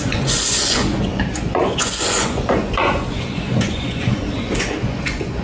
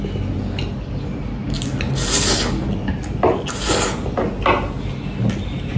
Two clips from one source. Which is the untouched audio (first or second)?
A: second